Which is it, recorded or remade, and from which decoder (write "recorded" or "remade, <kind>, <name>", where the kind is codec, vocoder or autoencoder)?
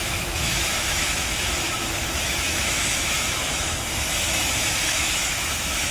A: remade, autoencoder, DAC-VAE